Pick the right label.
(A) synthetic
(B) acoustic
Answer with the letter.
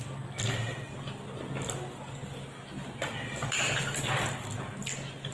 B